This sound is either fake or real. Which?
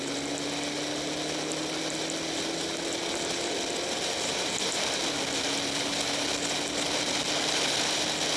real